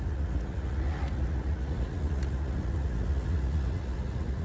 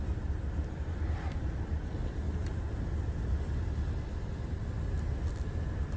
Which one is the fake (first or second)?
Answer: first